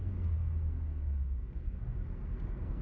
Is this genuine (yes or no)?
no